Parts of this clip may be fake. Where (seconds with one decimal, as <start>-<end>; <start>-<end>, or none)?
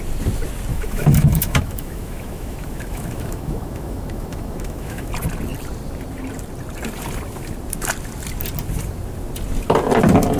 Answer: 0.7-5.1